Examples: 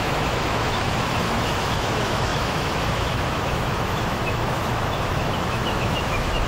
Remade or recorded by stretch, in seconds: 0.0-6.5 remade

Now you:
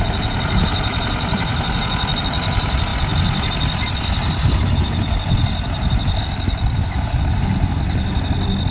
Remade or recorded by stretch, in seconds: 0.0-8.7 recorded